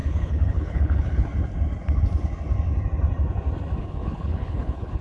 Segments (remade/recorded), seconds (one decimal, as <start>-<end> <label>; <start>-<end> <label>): 0.0-1.3 remade; 1.3-3.8 recorded; 3.8-5.0 remade